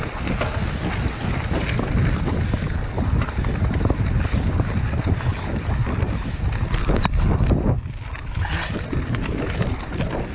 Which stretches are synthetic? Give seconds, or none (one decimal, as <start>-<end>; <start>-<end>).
none